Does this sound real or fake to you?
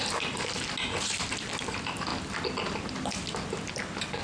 real